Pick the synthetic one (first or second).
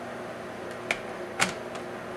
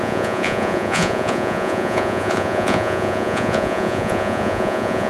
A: second